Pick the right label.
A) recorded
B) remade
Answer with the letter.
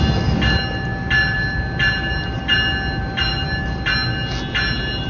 A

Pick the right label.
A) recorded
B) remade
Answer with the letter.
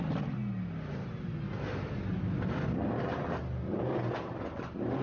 A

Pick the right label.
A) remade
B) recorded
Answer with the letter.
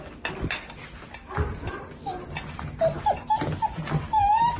B